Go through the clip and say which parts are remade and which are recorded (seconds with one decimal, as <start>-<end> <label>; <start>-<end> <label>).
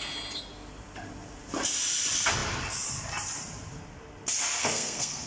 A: 0.0-4.6 recorded; 4.6-5.3 remade